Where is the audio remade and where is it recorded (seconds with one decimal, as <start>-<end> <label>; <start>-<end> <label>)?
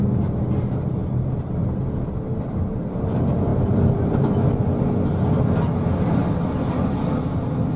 0.0-7.8 recorded